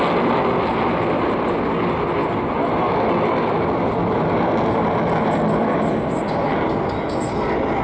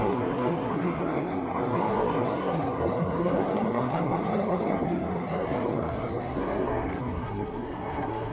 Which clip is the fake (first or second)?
second